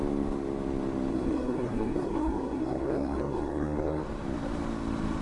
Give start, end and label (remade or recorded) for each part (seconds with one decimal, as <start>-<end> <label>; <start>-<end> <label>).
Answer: 0.0-1.1 recorded; 1.1-4.0 remade; 4.0-5.2 recorded